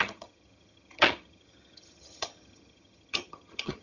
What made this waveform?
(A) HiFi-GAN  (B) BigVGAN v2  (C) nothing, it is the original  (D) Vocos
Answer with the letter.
A